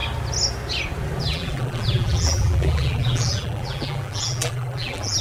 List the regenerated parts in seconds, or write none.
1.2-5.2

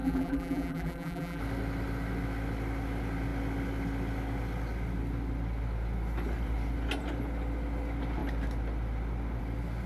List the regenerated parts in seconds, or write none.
0.0-1.4

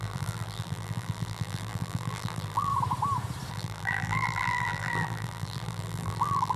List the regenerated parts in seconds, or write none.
0.0-2.7; 3.5-6.6

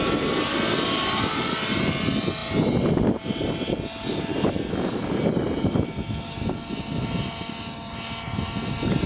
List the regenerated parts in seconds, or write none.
none

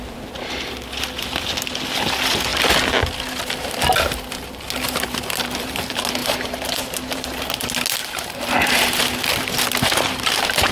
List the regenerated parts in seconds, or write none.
6.2-7.4; 8.0-8.5